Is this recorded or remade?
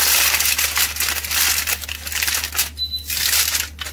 recorded